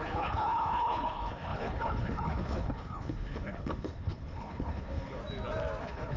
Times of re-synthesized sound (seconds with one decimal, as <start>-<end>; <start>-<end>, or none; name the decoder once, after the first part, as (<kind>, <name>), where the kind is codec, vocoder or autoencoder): 0.0-5.2 (codec, HILCodec); 5.8-6.2